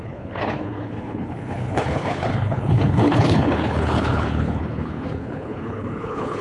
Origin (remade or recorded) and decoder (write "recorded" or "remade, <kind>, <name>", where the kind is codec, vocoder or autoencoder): remade, codec, HILCodec